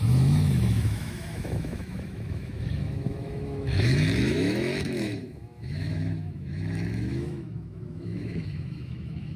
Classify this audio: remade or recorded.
remade